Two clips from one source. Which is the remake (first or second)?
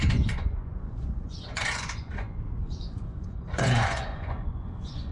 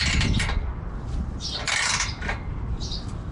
first